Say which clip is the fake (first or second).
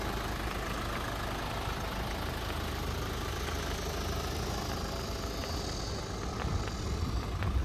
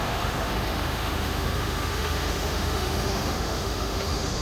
second